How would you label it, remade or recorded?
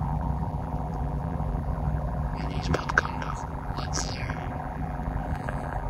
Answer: remade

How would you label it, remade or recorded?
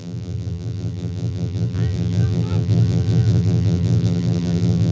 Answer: remade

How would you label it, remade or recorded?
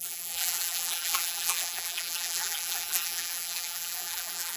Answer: remade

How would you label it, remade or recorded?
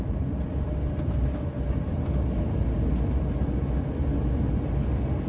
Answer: recorded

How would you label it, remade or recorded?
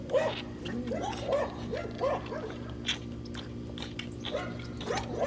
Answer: recorded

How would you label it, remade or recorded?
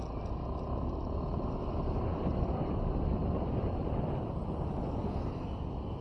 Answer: recorded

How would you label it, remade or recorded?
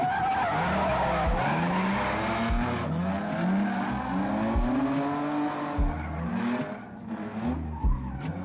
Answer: recorded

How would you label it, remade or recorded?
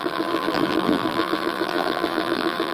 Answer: remade